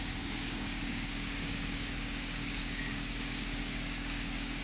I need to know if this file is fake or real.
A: fake